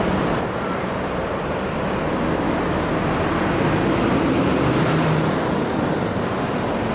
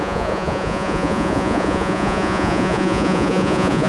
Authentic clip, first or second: first